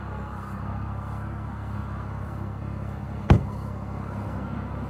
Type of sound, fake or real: fake